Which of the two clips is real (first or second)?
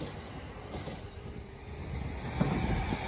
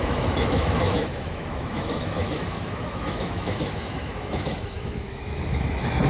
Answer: first